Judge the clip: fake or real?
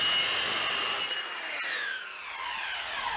real